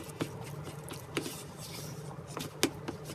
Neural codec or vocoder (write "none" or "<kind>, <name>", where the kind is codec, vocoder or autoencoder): none